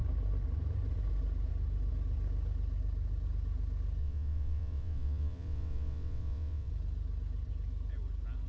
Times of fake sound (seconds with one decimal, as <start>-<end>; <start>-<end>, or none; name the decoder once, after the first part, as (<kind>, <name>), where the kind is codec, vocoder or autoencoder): 4.0-6.7 (vocoder, WaveNeXt)

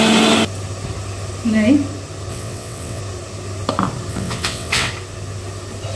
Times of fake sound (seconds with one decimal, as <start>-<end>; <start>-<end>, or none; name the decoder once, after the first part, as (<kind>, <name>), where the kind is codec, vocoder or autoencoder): 2.3-3.0 (vocoder, WaveNeXt); 4.1-4.9

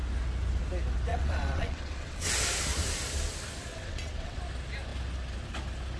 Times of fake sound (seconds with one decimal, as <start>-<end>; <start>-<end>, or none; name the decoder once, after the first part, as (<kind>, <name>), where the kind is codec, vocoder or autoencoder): 1.1-2.3 (vocoder, WaveNeXt); 3.7-4.4